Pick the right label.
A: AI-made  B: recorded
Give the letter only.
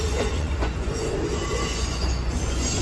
A